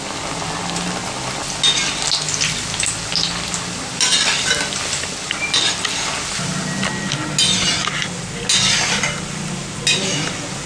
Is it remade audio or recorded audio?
recorded